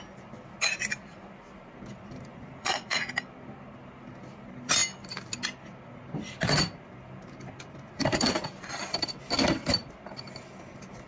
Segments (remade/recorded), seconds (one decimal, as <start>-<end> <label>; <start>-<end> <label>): 0.0-2.3 recorded; 2.3-3.1 remade; 3.1-11.1 recorded